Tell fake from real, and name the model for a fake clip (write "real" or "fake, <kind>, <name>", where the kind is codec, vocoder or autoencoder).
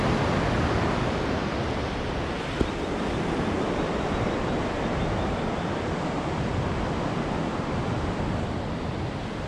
real